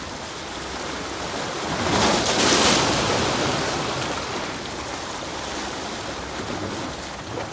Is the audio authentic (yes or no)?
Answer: yes